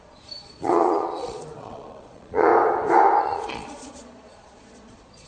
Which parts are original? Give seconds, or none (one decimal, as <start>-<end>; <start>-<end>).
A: 2.5-3.2